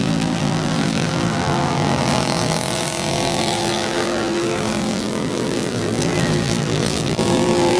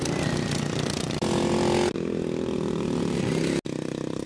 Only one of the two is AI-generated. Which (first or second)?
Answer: first